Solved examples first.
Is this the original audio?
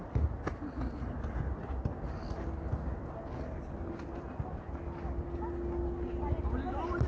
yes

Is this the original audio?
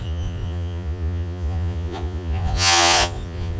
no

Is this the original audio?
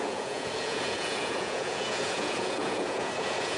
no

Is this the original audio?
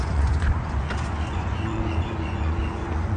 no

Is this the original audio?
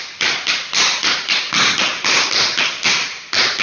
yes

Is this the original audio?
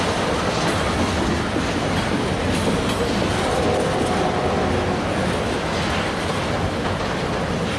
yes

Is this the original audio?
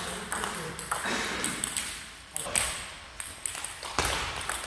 yes